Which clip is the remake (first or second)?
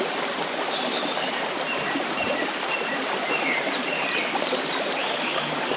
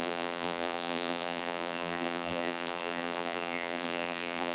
second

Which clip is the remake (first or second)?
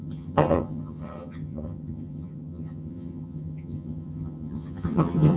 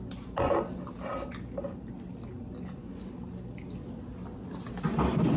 first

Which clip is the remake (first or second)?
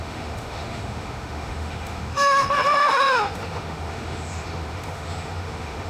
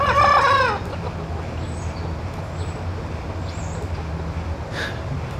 first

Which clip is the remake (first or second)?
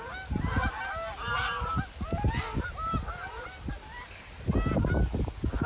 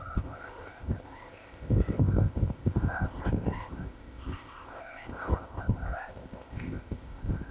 second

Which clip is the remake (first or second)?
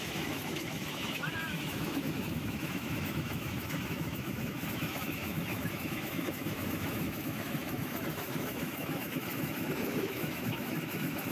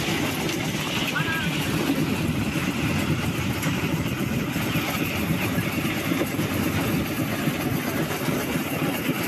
first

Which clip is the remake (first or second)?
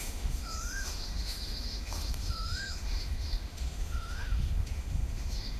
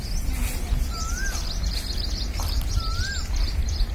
first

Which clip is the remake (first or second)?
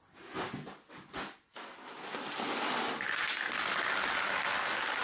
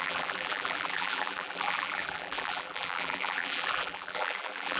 second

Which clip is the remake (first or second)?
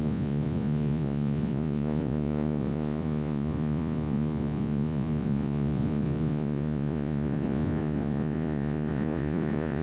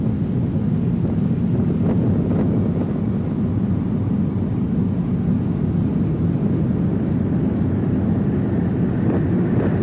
first